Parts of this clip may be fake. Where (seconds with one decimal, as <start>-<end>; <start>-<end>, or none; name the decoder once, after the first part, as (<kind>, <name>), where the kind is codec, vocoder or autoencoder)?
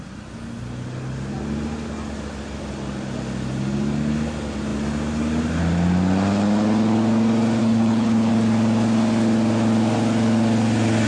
7.6-8.3 (codec, HILCodec)